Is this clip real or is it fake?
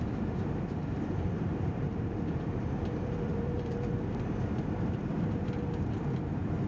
fake